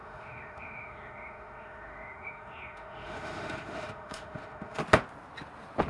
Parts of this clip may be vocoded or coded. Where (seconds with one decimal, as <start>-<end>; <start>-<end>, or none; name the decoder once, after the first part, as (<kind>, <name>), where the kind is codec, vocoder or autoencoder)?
0.0-4.8 (autoencoder, DAC-VAE)